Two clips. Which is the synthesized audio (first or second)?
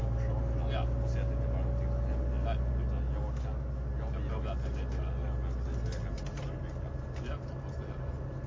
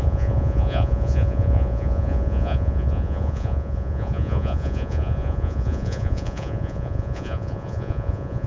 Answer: second